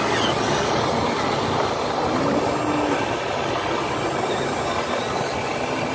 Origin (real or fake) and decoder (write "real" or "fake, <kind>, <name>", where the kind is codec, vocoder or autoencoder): real